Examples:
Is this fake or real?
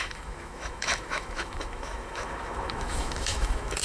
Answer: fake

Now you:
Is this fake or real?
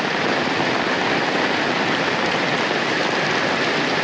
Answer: real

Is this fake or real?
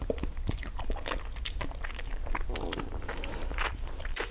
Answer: fake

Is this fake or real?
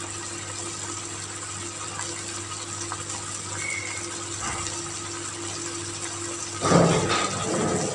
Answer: real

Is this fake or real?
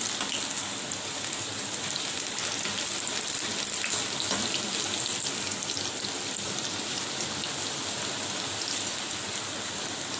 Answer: real